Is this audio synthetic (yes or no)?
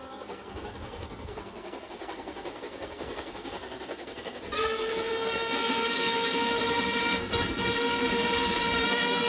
yes